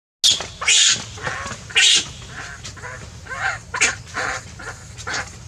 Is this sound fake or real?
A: real